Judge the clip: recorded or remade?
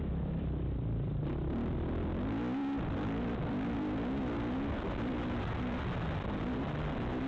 recorded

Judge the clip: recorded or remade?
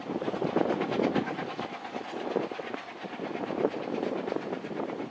recorded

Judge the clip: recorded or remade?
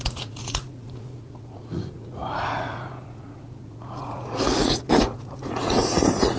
remade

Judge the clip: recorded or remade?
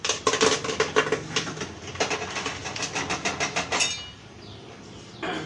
recorded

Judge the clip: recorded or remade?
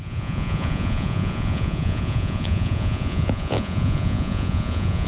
remade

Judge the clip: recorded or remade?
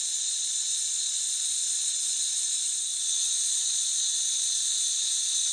remade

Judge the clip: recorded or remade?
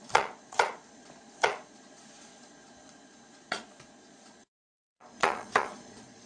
remade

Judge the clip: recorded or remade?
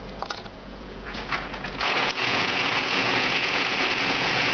remade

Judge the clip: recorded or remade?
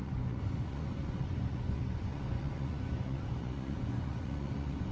remade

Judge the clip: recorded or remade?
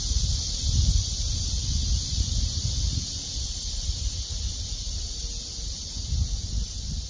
recorded